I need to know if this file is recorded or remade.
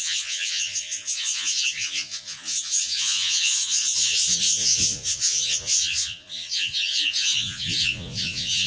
remade